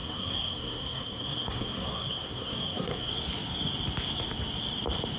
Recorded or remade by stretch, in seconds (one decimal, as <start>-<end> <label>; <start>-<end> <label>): 0.0-3.1 remade; 3.1-5.2 recorded